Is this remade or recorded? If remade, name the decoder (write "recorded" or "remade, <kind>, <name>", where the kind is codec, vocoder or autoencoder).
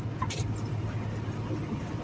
recorded